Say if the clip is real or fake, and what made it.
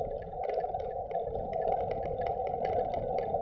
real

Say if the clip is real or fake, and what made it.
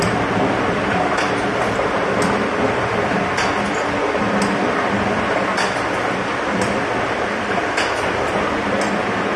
real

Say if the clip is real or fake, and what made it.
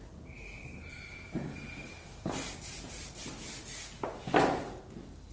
real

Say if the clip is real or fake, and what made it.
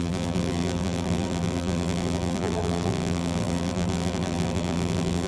fake, vocoder, BigVGAN v2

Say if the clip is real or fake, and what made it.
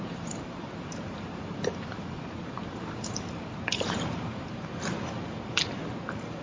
fake, vocoder, BigVGAN v2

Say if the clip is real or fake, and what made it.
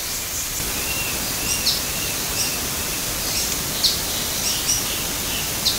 real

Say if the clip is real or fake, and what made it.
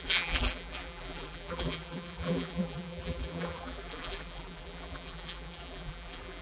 fake, vocoder, BigVGAN v2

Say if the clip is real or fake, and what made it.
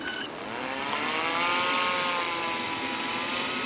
real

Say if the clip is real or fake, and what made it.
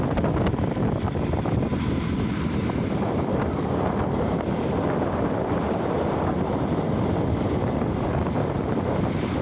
real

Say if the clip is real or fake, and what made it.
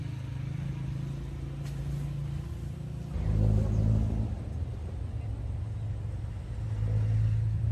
real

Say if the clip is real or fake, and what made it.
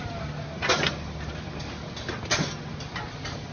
real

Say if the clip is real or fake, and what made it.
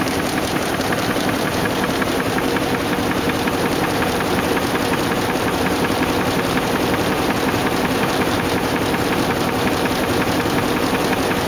fake, vocoder, BigVGAN v2